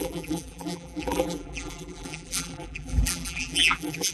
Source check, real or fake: fake